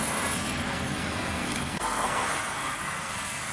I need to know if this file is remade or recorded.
remade